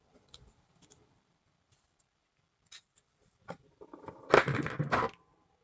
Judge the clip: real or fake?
real